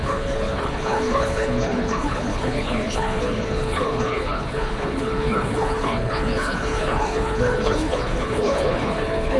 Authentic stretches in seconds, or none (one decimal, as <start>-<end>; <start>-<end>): none